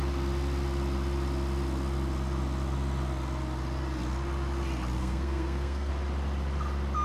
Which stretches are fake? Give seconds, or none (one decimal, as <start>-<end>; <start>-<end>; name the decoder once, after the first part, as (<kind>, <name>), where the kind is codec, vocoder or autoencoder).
5.0-5.9 (codec, SNAC)